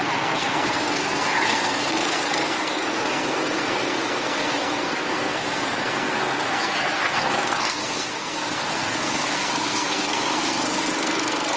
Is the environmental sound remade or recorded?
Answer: remade